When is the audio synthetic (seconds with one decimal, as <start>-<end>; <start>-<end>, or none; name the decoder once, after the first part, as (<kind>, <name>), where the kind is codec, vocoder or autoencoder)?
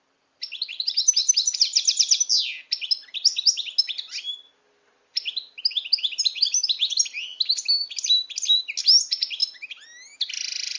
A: none